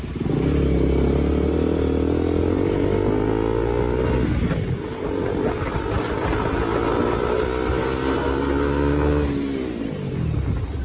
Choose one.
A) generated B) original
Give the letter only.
B